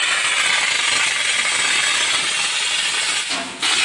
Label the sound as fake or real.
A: real